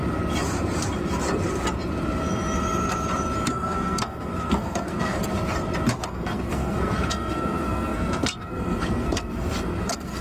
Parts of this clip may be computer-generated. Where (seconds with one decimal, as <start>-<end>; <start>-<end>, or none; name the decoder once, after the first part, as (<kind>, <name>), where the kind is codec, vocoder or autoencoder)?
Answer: 3.5-5.2 (codec, SNAC); 6.1-10.2